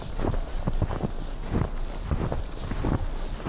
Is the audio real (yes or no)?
yes